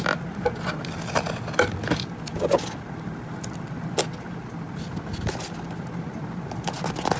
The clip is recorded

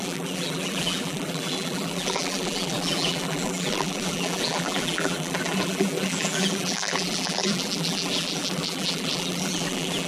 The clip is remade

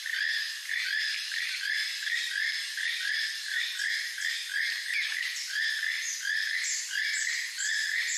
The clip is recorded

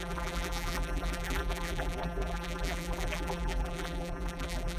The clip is remade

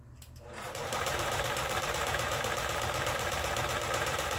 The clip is remade